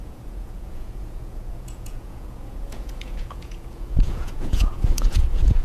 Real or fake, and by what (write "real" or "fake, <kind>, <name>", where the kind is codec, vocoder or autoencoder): fake, vocoder, Vocos